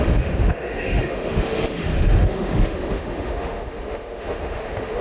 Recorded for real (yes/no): no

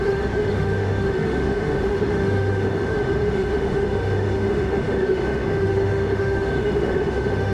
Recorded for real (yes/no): no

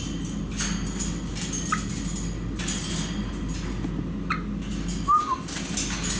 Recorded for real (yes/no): yes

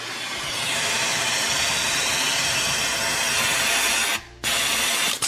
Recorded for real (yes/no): yes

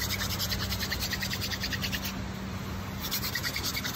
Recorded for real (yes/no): yes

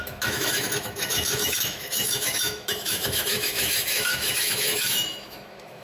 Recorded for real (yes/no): no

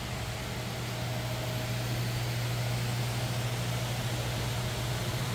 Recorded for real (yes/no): yes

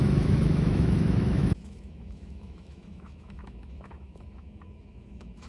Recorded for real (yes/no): no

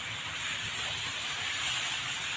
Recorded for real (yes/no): yes